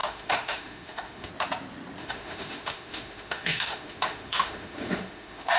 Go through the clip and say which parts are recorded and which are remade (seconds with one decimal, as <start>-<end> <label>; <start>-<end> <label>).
0.0-1.3 remade; 1.3-2.0 recorded; 2.0-5.6 remade